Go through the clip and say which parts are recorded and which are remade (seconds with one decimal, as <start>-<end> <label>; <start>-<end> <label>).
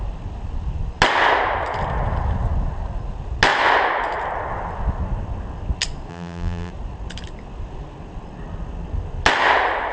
0.0-6.1 recorded; 6.1-6.7 remade; 6.7-9.9 recorded